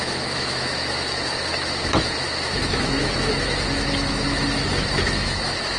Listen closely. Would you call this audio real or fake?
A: fake